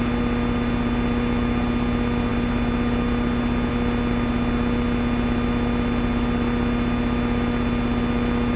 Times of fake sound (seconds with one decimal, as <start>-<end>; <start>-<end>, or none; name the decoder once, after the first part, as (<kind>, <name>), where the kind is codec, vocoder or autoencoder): none